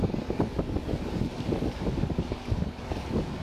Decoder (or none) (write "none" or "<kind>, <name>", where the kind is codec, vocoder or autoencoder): codec, DAC